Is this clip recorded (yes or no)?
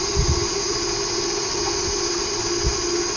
yes